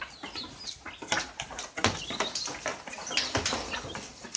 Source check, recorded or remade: recorded